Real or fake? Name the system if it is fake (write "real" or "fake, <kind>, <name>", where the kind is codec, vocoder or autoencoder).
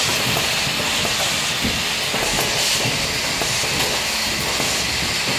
real